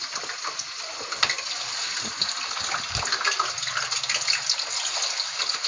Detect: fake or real real